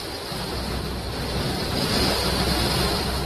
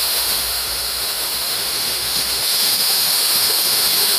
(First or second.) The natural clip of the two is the first